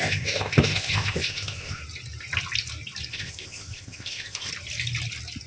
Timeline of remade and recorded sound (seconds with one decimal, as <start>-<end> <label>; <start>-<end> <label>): 0.0-1.8 remade; 1.8-3.1 recorded; 3.1-4.5 remade; 4.5-5.5 recorded